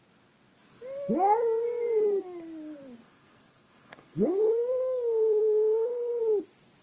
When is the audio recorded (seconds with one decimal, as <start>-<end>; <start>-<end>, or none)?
0.0-3.0; 6.2-6.8